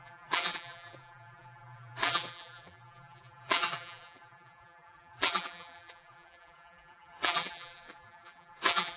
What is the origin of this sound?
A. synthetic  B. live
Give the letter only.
A